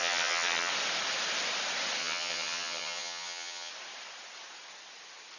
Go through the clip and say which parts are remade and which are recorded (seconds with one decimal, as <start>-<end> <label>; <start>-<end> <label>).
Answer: 0.0-0.7 remade; 0.7-2.0 recorded; 2.0-3.7 remade; 3.7-5.4 recorded

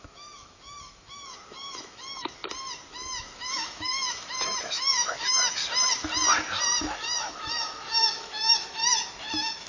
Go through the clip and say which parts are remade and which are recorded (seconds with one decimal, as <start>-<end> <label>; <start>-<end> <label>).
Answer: 0.0-2.4 remade; 2.4-2.9 recorded; 2.9-5.6 remade; 5.6-6.8 recorded; 6.8-9.7 remade

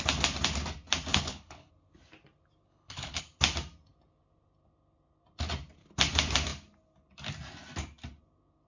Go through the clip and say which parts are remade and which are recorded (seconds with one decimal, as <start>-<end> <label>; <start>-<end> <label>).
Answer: 0.0-1.1 recorded; 1.1-1.7 remade; 1.7-2.7 recorded; 2.7-3.2 remade; 3.2-8.7 recorded

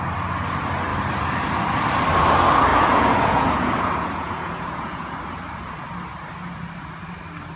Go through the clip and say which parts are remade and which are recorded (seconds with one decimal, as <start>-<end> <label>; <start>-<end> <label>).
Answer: 0.0-2.7 recorded; 2.7-5.2 remade; 5.2-7.6 recorded

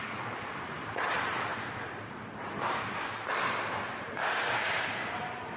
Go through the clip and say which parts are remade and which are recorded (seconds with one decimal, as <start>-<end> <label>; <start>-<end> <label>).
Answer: 0.0-5.6 recorded